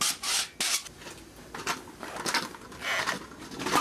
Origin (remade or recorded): recorded